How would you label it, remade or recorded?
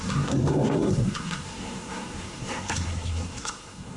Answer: remade